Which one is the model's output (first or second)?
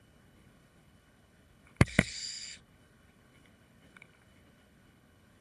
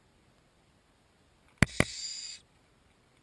first